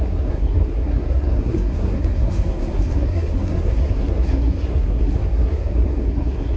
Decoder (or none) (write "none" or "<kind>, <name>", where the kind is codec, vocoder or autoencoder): codec, SNAC